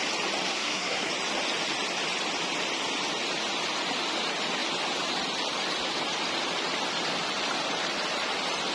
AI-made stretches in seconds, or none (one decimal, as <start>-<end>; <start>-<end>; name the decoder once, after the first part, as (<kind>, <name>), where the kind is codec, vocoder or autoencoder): 0.5-1.1 (codec, SNAC)